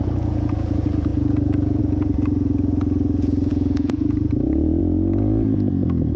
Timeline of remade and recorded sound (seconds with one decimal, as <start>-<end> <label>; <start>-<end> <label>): 0.0-6.2 remade